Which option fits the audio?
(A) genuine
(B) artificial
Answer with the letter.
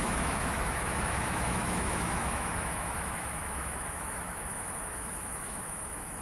B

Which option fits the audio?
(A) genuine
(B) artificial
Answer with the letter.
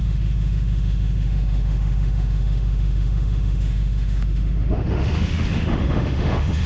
B